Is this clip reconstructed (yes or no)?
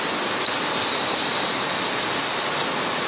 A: no